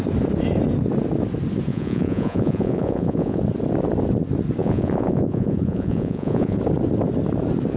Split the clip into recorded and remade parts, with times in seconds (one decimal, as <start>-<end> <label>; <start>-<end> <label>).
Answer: 0.0-1.7 recorded; 1.7-3.4 remade; 3.4-4.6 recorded; 4.6-6.6 remade; 6.6-7.8 recorded